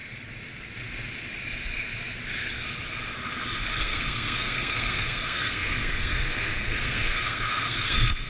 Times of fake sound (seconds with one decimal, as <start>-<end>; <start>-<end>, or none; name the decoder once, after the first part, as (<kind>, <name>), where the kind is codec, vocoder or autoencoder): 3.8-8.3 (codec, SNAC)